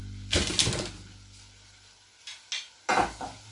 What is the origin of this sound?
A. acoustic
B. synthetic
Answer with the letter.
A